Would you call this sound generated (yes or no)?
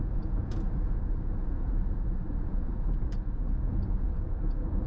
yes